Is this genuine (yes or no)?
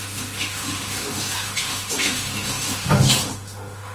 no